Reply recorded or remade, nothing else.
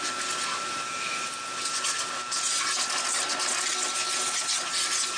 recorded